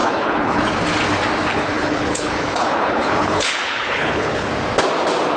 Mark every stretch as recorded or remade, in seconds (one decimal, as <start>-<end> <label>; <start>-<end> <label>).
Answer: 0.0-0.6 remade; 0.6-1.5 recorded; 1.5-4.5 remade; 4.5-5.4 recorded